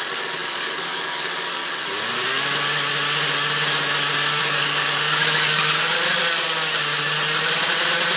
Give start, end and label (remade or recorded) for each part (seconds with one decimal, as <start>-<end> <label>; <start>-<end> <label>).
0.0-1.6 remade; 1.6-4.4 recorded; 4.4-5.6 remade; 5.6-8.2 recorded